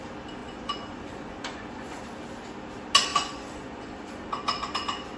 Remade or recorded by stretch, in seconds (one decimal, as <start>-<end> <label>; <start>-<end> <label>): 0.0-0.4 recorded; 0.4-2.0 remade; 2.0-3.1 recorded; 3.1-4.3 remade; 4.3-5.2 recorded